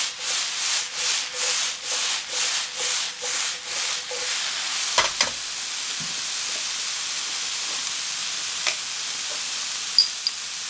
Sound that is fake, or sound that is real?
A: real